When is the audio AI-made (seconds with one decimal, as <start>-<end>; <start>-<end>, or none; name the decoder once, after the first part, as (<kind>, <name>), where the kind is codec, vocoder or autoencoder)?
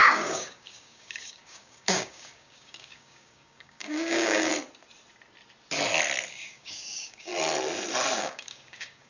0.0-4.5 (codec, DAC); 6.3-7.3; 8.2-9.1